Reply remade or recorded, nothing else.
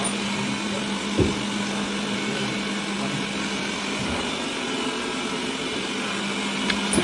recorded